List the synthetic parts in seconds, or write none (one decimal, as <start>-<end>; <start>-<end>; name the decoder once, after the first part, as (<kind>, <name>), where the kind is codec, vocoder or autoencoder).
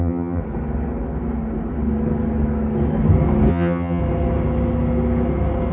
0.0-0.4 (vocoder, HiFi-GAN); 3.5-4.0